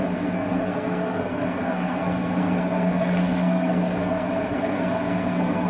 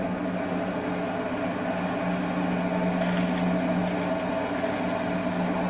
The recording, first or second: second